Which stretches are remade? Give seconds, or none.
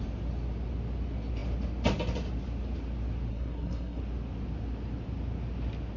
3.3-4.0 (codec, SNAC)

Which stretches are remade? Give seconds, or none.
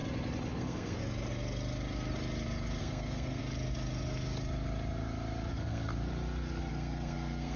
0.5-1.0 (codec, SNAC); 2.8-3.4; 5.5-5.9; 6.7-7.6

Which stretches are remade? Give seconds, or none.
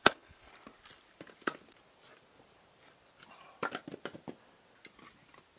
0.0-0.5 (codec, SNAC)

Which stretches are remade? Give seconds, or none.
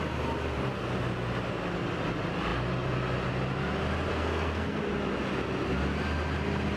4.1-4.8 (codec, SNAC)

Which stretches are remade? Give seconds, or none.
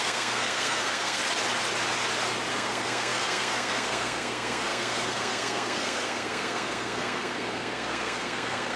0.0-1.2 (codec, SNAC); 2.5-8.8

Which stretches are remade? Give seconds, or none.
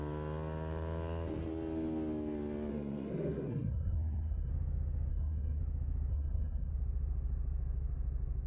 2.7-4.5 (codec, SNAC); 5.1-5.6; 6.1-6.7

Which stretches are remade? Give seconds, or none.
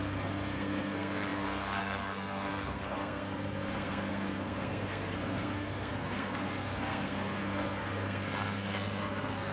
0.0-9.5 (codec, SNAC)